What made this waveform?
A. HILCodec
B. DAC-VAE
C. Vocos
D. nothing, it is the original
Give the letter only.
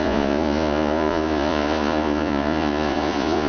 C